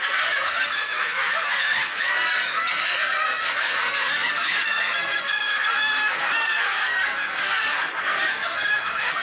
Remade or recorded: remade